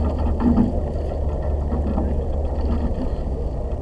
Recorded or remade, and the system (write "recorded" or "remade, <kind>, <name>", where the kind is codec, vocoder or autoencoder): recorded